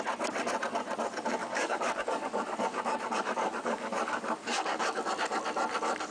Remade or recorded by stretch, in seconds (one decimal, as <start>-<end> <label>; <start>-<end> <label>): 0.0-1.4 recorded; 1.4-5.1 remade; 5.1-6.1 recorded